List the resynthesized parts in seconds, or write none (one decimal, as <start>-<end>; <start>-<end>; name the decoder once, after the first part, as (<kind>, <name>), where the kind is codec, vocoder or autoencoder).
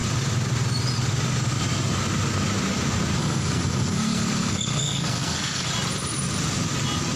3.2-5.7 (codec, SNAC)